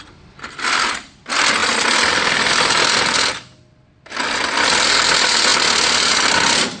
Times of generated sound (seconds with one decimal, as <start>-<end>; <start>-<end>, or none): none